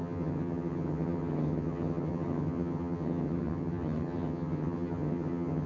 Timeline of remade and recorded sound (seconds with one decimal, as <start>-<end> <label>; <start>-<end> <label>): 0.0-5.7 remade